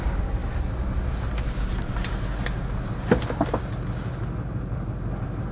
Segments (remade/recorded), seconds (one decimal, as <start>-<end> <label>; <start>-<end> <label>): 0.0-5.5 recorded